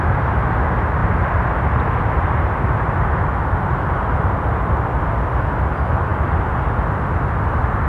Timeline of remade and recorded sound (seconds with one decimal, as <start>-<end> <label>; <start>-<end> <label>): 0.0-7.9 recorded

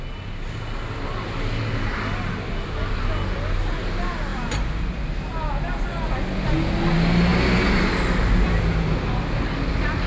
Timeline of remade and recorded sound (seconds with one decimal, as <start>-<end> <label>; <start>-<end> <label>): 0.0-10.1 recorded